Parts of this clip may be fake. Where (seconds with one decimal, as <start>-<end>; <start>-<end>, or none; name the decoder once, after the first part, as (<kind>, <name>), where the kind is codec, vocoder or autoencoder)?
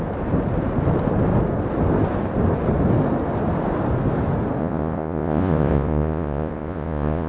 4.6-7.3 (vocoder, Vocos)